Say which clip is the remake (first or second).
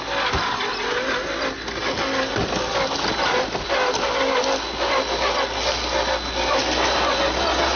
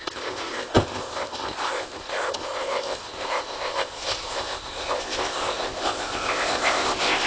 second